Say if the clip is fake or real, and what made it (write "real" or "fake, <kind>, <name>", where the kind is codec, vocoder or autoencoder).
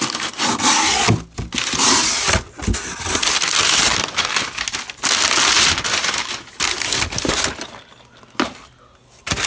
real